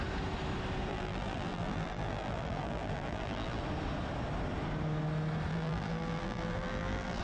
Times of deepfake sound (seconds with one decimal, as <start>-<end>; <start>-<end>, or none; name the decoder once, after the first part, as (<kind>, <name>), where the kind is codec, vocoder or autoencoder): 0.9-3.6 (vocoder, BigVGAN v2); 5.5-7.2